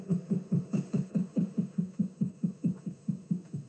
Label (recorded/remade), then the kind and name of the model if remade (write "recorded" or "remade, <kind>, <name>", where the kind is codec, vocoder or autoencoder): remade, autoencoder, DAC-VAE